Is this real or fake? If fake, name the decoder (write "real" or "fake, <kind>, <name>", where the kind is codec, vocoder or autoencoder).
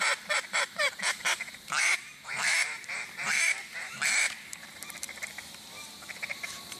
fake, vocoder, BigVGAN v2